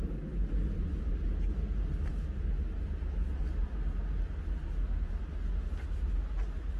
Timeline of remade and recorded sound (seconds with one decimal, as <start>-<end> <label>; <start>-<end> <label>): 0.0-6.8 recorded